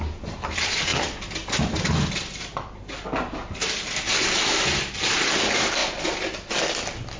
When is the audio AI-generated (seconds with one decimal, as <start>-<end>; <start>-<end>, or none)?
0.9-1.9; 5.8-6.5